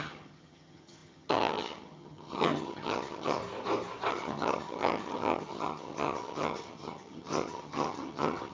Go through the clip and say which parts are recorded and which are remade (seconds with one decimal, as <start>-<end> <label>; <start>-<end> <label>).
0.0-3.4 remade; 3.4-4.1 recorded; 4.1-8.5 remade